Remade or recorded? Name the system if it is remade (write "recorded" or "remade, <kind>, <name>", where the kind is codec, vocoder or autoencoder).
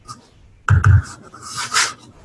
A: recorded